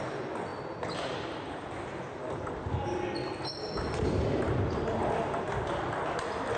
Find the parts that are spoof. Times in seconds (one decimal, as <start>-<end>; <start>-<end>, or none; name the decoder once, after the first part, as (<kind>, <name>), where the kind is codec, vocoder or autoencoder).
none